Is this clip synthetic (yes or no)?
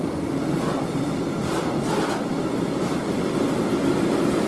no